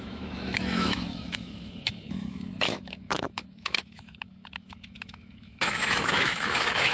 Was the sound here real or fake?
fake